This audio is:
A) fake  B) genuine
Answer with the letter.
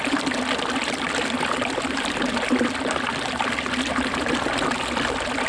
B